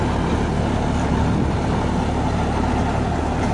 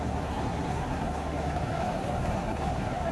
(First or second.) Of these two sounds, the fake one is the second